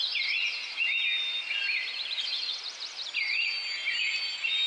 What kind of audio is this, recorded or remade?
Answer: recorded